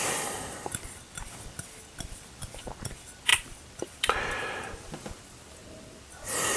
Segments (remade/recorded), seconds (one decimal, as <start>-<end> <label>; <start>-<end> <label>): 0.0-6.6 remade